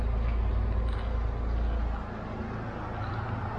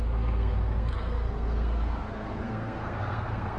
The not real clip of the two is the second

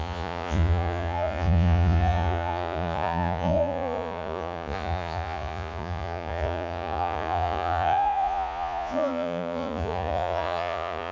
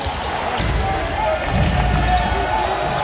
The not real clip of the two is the first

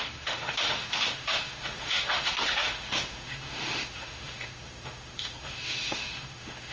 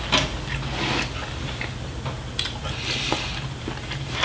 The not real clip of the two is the first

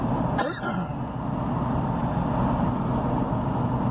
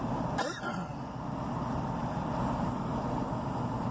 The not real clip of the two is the second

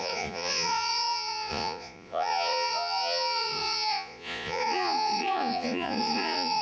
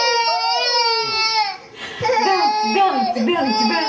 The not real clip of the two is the first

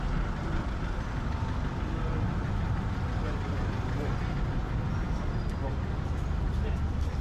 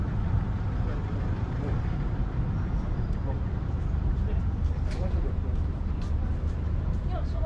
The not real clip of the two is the second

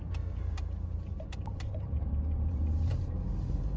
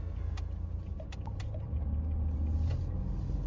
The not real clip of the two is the first